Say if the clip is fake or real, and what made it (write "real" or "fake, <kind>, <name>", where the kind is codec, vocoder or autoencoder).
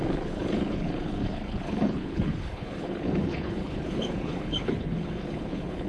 fake, codec, HILCodec